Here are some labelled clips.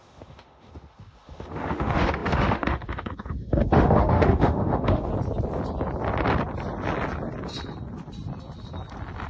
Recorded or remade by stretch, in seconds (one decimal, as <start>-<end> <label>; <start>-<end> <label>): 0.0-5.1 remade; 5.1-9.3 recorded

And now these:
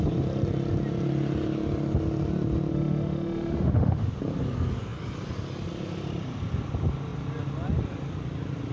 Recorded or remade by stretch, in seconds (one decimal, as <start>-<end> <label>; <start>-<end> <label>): 0.0-2.7 recorded; 2.7-4.2 remade; 4.2-8.7 recorded

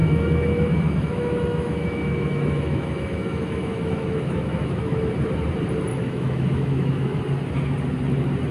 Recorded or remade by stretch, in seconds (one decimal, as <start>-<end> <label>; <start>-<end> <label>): 0.0-5.1 remade; 5.1-5.9 recorded; 5.9-7.2 remade; 7.2-8.5 recorded

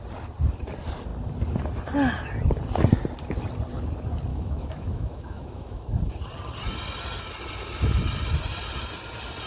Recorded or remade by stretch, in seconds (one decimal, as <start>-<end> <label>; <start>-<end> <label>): 0.0-4.3 recorded; 4.3-5.9 remade; 5.9-9.5 recorded

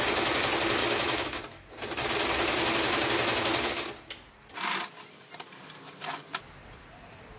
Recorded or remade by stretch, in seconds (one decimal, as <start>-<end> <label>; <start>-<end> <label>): 0.0-0.8 recorded; 0.8-1.4 remade; 1.4-7.4 recorded

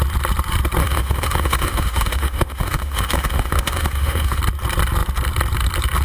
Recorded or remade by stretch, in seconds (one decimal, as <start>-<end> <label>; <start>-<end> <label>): 0.0-0.8 recorded; 0.8-4.4 remade; 4.4-6.0 recorded

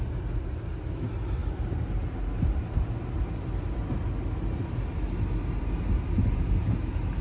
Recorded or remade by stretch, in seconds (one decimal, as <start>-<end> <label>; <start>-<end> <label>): 0.0-7.2 recorded

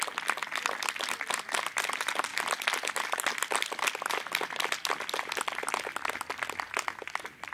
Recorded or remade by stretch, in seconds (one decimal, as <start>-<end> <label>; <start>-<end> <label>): 0.0-7.5 recorded